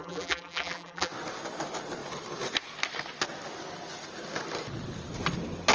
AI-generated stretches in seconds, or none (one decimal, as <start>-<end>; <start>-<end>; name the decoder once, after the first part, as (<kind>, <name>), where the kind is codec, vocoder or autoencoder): 0.0-1.1 (vocoder, BigVGAN v2)